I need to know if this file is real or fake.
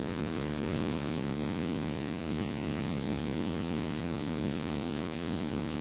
fake